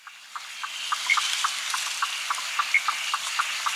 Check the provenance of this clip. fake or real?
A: real